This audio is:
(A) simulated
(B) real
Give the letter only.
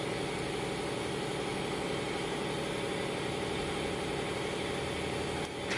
B